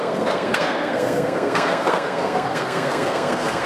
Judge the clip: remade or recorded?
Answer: remade